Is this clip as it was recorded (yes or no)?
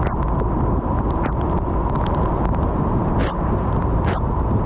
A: yes